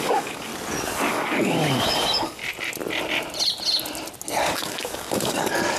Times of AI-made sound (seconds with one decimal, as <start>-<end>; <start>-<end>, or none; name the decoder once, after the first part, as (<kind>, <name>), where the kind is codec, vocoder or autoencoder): 0.0-0.5 (codec, DAC); 1.1-2.4; 4.4-5.8